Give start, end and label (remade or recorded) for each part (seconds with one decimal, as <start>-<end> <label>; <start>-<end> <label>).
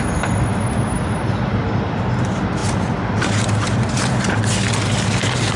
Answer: 0.0-5.6 recorded